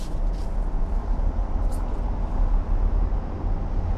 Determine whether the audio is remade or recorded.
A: recorded